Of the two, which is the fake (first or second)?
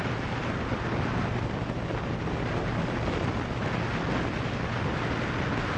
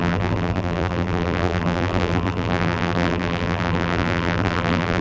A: second